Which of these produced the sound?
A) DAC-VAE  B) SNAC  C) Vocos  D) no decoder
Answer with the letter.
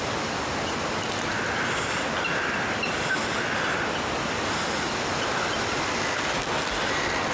D